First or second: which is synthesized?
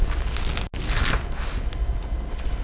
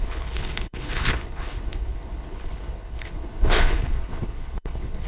second